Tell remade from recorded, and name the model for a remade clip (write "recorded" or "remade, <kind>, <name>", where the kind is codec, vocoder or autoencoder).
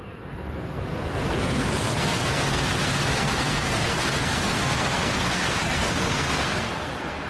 remade, codec, SNAC